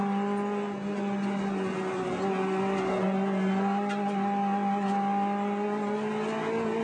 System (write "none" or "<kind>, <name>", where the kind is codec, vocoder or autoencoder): none